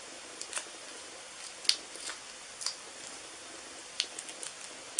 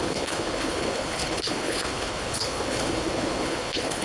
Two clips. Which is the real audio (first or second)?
first